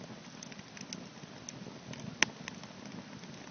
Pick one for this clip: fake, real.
real